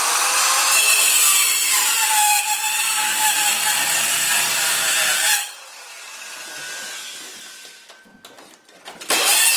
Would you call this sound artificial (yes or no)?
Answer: no